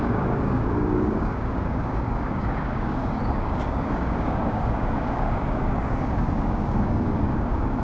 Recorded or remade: remade